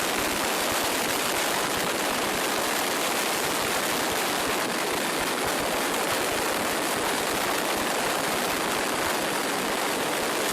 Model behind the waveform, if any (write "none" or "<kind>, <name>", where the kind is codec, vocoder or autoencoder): none